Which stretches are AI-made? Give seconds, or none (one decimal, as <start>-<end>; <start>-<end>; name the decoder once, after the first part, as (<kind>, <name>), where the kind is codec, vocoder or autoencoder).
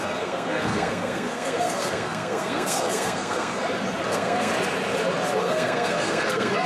0.0-3.6 (codec, SNAC); 4.1-4.5; 5.4-6.7